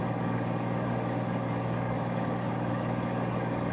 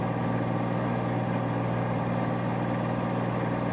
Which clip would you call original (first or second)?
second